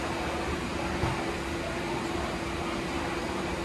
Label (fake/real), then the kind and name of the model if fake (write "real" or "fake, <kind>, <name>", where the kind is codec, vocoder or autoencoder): real